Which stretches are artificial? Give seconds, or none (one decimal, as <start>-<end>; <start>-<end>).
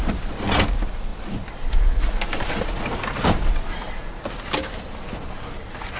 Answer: none